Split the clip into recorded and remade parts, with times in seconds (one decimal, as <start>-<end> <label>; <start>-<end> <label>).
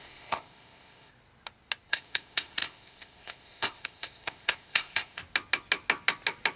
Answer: 0.0-1.1 remade; 1.1-1.9 recorded; 1.9-5.2 remade; 5.2-6.6 recorded